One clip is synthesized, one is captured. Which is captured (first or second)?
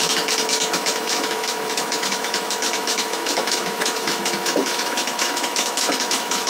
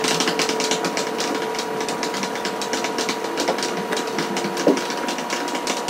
second